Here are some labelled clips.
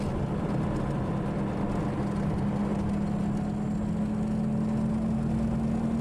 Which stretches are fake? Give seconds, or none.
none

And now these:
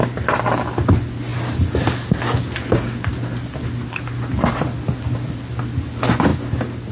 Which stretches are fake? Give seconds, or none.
none

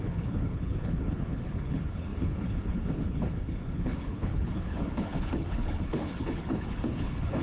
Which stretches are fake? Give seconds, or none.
0.0-7.4 (codec, HILCodec)

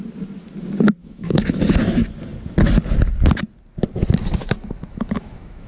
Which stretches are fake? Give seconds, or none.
1.0-1.6 (autoencoder, DAC-VAE); 4.9-5.7

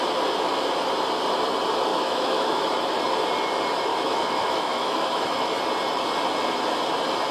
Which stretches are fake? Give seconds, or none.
1.9-2.6 (autoencoder, DAC-VAE); 3.9-5.6

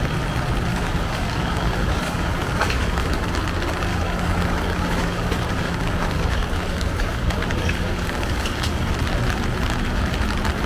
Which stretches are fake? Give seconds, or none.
0.7-3.3 (codec, DAC); 3.9-8.9